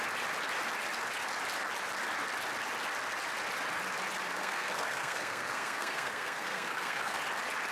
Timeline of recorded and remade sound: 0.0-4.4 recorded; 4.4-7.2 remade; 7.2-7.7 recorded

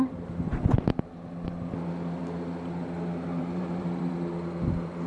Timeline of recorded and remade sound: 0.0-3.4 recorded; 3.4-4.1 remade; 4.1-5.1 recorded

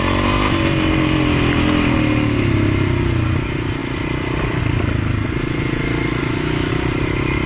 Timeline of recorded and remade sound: 0.0-6.2 recorded; 6.2-6.7 remade; 6.7-7.5 recorded

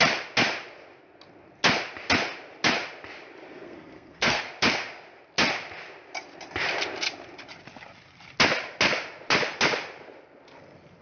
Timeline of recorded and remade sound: 0.0-3.5 recorded; 3.5-4.4 remade; 4.4-11.0 recorded